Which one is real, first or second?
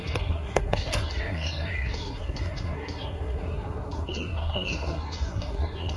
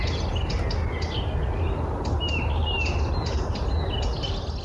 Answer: second